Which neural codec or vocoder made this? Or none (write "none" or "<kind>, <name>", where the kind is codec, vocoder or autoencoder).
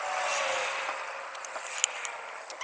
none